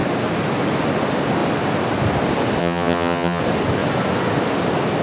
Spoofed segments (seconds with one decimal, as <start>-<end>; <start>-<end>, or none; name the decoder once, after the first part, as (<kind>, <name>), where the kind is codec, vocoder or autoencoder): 2.6-3.4 (vocoder, HiFi-GAN)